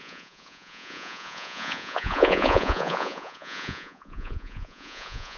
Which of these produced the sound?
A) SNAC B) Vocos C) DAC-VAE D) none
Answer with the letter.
B